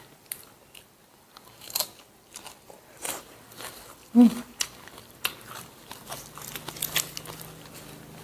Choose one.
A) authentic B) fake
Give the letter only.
B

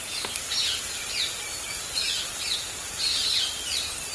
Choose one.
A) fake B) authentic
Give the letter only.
B